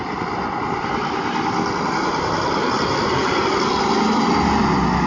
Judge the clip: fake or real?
real